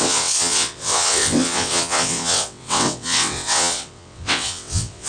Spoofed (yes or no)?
yes